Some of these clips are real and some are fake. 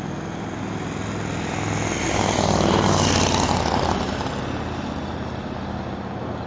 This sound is real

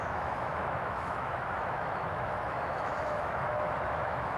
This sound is fake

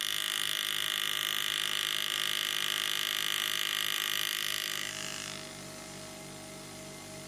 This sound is real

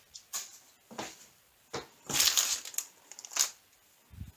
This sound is real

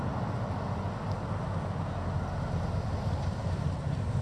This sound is real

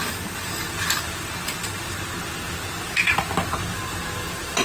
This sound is real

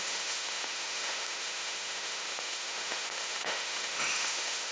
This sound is fake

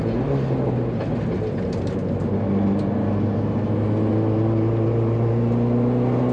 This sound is real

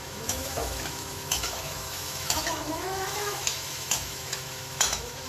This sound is fake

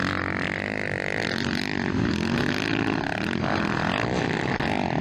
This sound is real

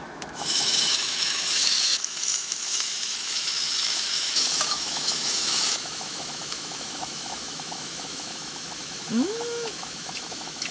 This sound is fake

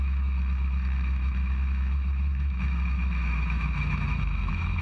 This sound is fake